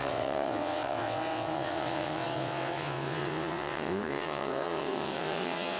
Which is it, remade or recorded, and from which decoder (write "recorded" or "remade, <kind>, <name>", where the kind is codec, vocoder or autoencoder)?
remade, vocoder, WaveNeXt